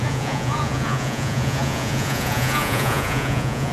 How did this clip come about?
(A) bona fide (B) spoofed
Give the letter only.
B